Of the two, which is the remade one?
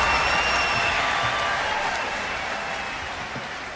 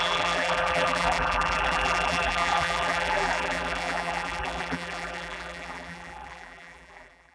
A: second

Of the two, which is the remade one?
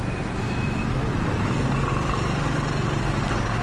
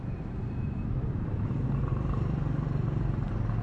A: second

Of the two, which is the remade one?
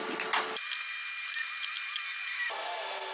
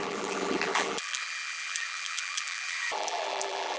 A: second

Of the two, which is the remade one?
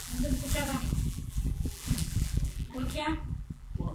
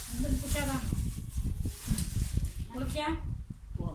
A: first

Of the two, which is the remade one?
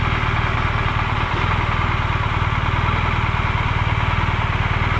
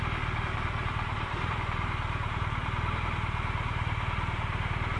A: second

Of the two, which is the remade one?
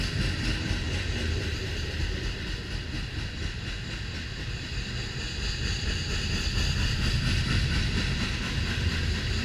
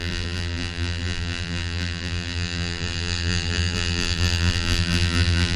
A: second